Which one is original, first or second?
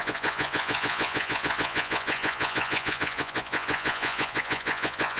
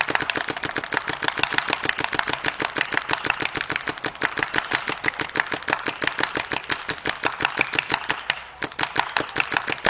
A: second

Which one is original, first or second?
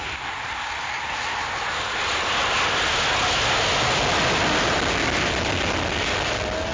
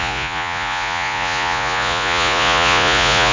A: first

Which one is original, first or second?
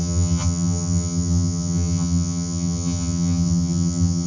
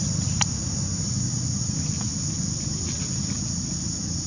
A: second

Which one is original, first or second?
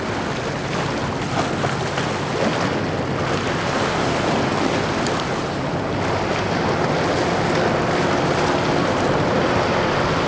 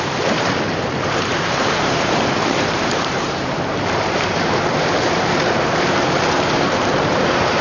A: first